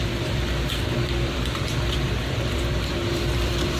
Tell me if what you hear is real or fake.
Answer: fake